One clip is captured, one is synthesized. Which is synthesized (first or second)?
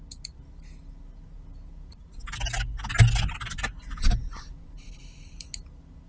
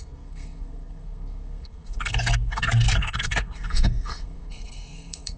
second